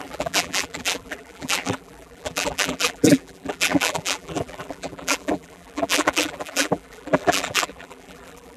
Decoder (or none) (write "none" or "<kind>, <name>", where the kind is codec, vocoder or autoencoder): vocoder, BigVGAN v2